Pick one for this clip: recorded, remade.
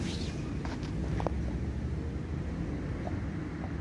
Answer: recorded